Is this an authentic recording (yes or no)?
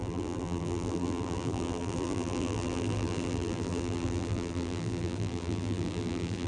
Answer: no